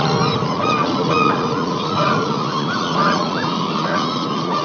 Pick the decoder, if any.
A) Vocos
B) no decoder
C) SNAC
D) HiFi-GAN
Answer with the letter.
A